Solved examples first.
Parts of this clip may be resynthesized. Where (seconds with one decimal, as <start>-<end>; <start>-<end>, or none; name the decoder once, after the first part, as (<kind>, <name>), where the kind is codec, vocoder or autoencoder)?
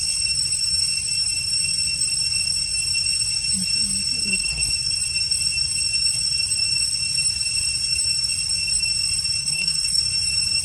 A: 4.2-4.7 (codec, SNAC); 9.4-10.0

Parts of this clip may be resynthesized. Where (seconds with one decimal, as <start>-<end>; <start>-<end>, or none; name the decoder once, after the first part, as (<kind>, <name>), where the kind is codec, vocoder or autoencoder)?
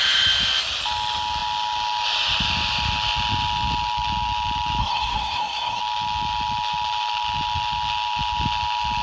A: 4.8-5.8 (codec, SNAC)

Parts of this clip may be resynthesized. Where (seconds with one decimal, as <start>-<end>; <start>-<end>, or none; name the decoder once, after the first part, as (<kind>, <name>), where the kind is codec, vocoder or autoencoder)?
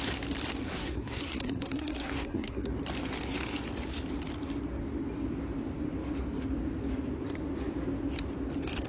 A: 0.7-2.7 (codec, SNAC)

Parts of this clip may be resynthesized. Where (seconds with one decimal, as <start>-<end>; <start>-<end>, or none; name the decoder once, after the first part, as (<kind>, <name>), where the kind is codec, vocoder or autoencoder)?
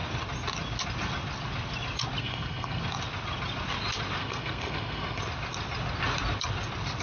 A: 2.2-2.8 (codec, SNAC); 4.2-5.2